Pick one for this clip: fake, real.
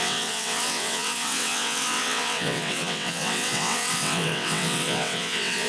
fake